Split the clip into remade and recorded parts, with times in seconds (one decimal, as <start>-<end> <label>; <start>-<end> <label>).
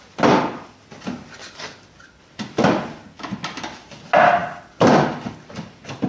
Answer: 0.0-6.1 recorded